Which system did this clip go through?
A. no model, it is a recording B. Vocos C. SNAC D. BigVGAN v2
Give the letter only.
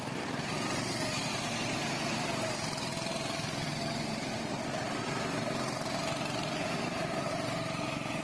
D